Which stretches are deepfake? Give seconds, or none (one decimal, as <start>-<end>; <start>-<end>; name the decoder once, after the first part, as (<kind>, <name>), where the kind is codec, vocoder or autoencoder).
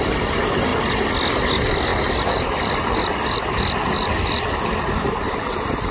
none